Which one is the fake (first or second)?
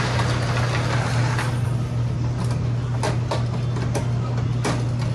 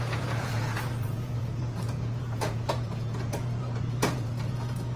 second